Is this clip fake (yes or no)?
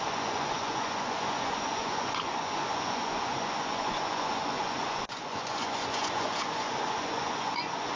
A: yes